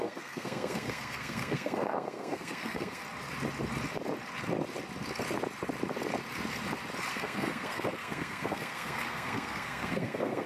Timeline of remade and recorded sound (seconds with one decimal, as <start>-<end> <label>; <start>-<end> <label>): 0.0-3.0 remade; 3.0-7.1 recorded; 7.1-10.5 remade